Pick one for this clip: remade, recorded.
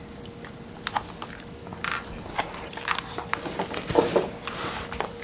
recorded